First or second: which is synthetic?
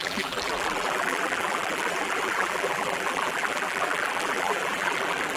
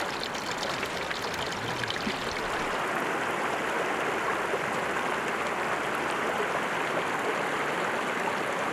first